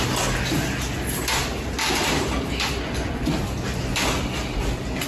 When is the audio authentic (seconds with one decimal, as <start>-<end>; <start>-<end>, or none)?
0.0-5.1